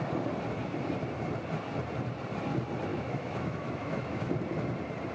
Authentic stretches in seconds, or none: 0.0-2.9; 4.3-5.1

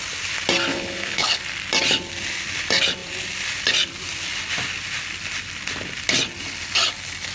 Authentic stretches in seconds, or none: 0.0-0.7; 1.4-7.3

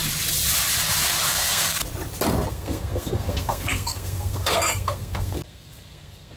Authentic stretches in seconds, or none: 0.0-1.3; 1.8-2.5

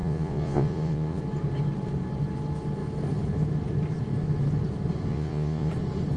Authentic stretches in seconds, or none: 1.2-5.1; 5.7-6.2

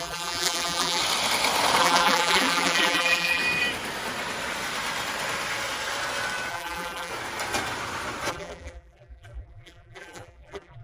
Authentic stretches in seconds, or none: 1.0-1.8; 3.4-6.5; 7.1-8.3

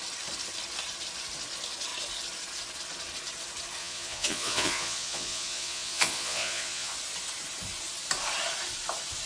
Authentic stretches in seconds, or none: 0.0-3.8; 6.9-9.3

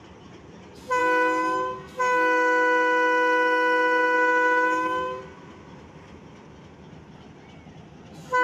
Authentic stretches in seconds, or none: 0.0-1.0; 5.2-8.4